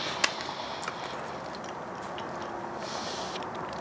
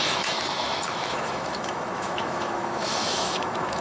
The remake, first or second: second